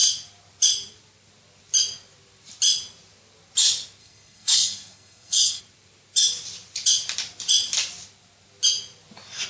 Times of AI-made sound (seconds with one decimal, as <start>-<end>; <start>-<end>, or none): 4.0-5.6